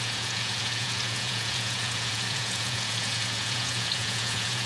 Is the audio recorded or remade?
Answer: remade